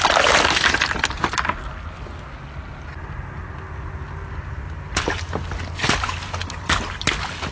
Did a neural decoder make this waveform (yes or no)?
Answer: no